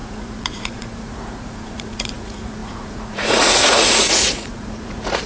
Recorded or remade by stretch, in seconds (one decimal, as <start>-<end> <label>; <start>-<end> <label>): 0.0-5.3 remade